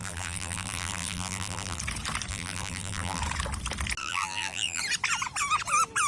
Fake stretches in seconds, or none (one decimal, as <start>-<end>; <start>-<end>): 0.0-1.8; 2.3-3.2; 4.0-4.8